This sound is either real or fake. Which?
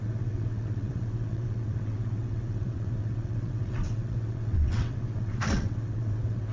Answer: fake